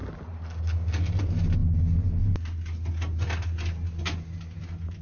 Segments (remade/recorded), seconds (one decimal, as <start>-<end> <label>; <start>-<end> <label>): 0.0-5.0 recorded